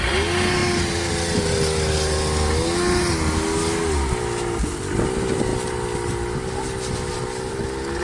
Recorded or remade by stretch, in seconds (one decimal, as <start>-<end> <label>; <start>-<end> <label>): 0.0-8.0 recorded